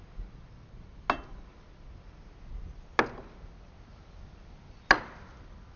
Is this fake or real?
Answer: real